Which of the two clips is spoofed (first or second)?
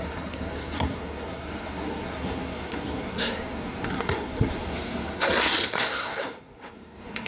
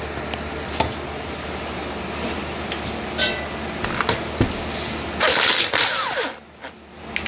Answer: first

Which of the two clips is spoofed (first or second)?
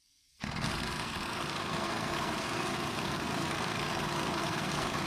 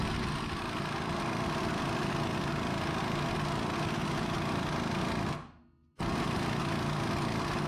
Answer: first